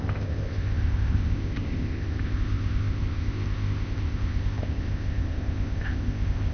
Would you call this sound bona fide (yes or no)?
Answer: no